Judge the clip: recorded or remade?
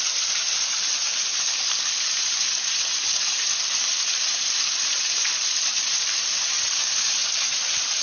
remade